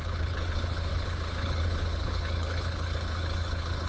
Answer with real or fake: fake